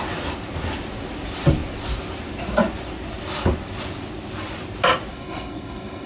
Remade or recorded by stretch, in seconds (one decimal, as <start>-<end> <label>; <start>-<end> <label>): 0.0-5.1 recorded; 5.1-6.1 remade